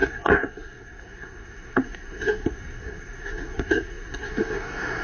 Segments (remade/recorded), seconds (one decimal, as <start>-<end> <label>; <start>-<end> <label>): 0.0-5.0 remade